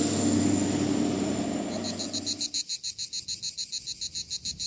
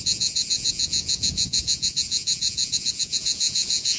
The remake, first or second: second